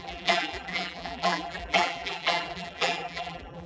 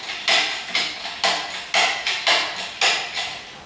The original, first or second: second